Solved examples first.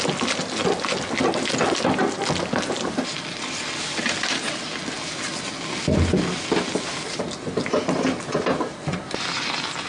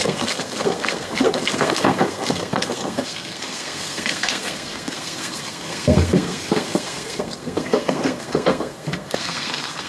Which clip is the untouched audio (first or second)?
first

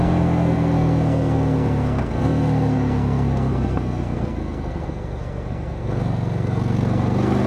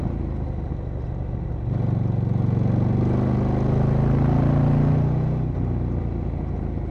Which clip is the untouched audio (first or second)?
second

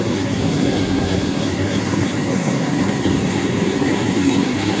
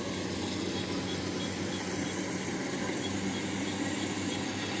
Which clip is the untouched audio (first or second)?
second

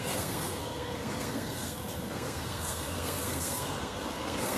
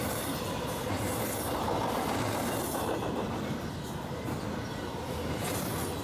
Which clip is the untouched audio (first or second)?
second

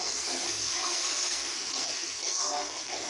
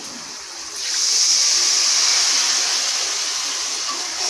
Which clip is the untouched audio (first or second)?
second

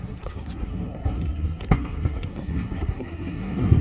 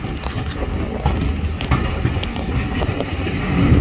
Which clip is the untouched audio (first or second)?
second